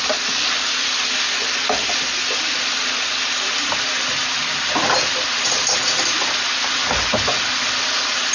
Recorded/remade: recorded